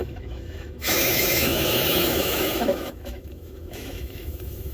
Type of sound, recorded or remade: remade